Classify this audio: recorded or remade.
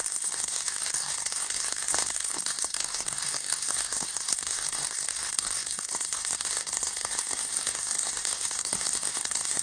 remade